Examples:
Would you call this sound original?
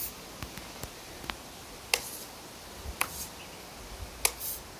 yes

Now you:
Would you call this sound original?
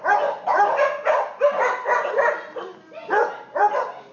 yes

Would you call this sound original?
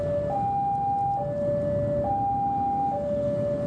yes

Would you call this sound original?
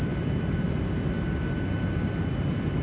yes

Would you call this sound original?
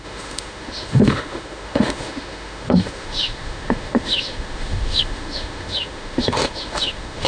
no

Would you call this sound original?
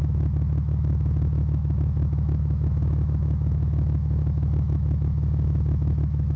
no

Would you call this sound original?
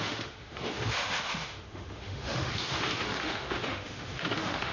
no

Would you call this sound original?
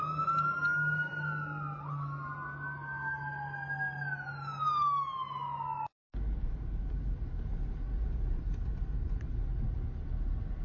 yes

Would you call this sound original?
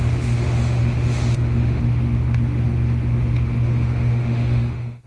no